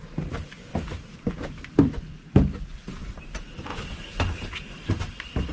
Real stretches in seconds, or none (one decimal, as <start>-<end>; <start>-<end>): 0.0-5.5